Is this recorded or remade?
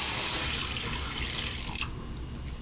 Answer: recorded